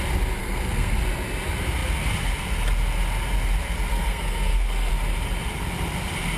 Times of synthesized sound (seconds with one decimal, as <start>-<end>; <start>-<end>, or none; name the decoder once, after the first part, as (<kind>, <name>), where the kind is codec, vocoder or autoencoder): 0.4-1.0 (codec, SNAC); 3.9-4.9